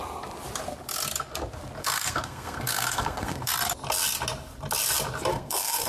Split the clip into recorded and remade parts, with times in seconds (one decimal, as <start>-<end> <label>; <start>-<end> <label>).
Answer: 0.0-1.8 recorded; 1.8-3.5 remade; 3.5-5.3 recorded; 5.3-5.9 remade